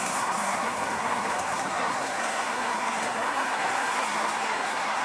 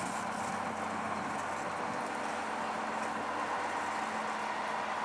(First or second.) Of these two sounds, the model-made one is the first